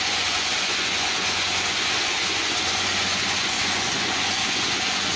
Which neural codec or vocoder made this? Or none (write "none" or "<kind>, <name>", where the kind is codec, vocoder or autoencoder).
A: vocoder, Vocos